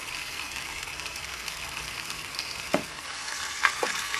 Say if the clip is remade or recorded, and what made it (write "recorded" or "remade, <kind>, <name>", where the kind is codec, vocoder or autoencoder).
remade, codec, SNAC